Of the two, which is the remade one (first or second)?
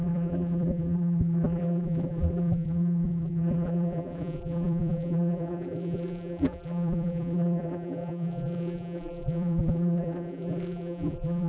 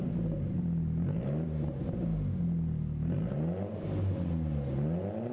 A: first